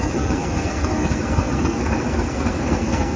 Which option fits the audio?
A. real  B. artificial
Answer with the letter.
B